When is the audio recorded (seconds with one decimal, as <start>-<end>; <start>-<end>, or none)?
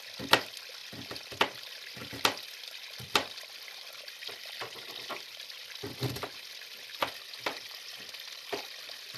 0.0-9.2